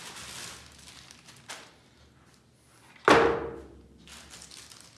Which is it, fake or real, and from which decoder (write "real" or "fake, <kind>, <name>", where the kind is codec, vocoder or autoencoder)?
real